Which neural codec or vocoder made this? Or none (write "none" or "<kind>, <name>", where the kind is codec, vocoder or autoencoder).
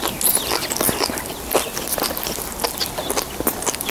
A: none